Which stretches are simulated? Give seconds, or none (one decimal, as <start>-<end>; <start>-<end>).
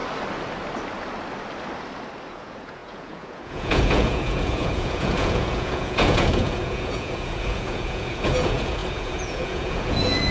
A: 2.3-10.3